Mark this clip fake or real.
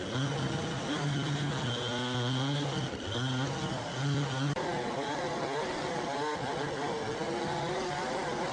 real